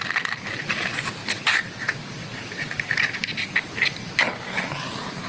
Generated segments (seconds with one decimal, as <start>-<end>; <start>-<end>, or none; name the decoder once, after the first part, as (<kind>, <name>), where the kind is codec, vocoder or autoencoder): none